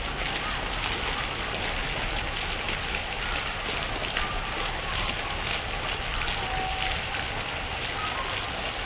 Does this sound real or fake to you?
real